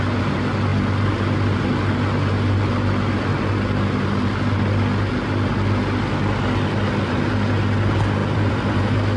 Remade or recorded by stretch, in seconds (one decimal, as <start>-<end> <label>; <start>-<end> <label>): 0.0-8.2 recorded; 8.2-8.7 remade; 8.7-9.2 recorded